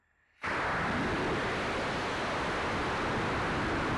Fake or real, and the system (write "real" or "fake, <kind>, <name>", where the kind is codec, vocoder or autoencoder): real